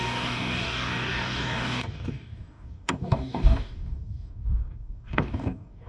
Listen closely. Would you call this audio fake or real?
fake